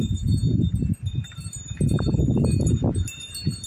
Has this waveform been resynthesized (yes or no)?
yes